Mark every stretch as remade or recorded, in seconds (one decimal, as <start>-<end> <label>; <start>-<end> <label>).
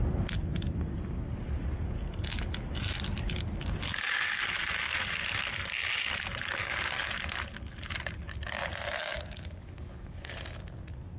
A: 0.0-6.6 recorded; 6.6-7.1 remade; 7.1-9.0 recorded; 9.0-10.3 remade; 10.3-11.2 recorded